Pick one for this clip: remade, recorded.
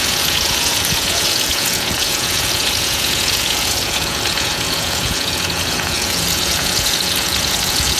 remade